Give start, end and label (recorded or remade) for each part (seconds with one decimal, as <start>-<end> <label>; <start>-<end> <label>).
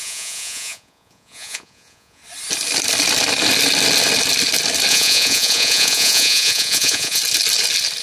0.0-2.2 remade; 2.2-4.9 recorded; 4.9-7.2 remade; 7.2-8.0 recorded